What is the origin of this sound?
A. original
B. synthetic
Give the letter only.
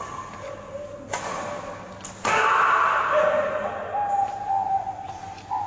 A